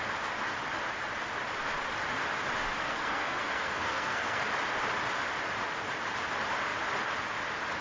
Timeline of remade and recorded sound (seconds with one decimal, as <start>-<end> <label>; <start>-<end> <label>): 0.0-2.8 recorded; 2.8-4.4 remade; 4.4-7.8 recorded

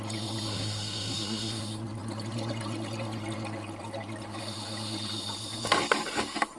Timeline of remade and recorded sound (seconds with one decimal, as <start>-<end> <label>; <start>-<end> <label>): 0.0-0.5 recorded; 0.5-1.6 remade; 1.6-6.6 recorded